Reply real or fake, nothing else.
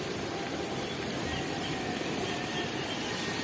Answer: fake